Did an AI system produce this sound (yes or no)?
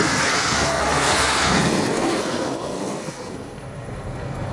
yes